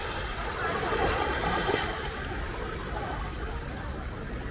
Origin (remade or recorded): recorded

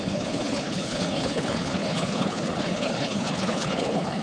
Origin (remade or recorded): remade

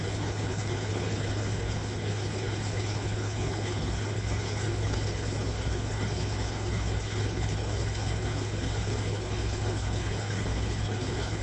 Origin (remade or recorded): remade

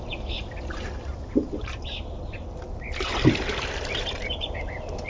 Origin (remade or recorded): recorded